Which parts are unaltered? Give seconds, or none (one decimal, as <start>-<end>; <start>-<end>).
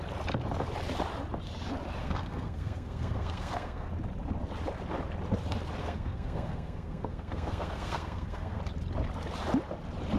0.0-2.0; 3.9-5.8; 8.6-10.2